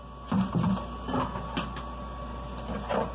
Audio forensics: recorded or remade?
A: recorded